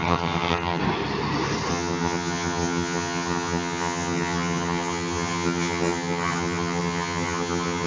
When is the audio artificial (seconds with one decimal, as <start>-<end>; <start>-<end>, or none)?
0.0-0.8; 1.7-7.9

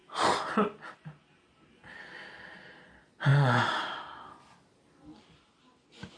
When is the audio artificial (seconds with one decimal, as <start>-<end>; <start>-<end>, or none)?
none

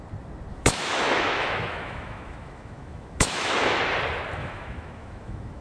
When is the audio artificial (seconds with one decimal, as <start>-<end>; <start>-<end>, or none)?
0.5-3.8; 4.4-5.6

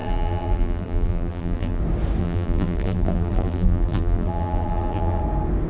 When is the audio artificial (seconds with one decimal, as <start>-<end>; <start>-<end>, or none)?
0.0-1.8; 2.2-5.2

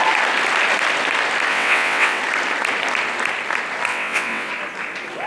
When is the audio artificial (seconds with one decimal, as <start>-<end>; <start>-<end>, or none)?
1.5-2.2; 3.9-4.5

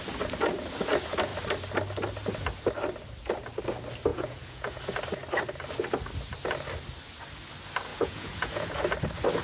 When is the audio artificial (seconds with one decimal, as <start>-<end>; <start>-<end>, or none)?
4.1-4.8; 7.9-8.8